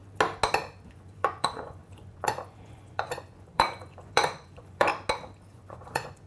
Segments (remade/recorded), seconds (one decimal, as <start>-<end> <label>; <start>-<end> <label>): 0.0-0.9 recorded; 0.9-4.9 remade; 4.9-5.5 recorded; 5.5-6.3 remade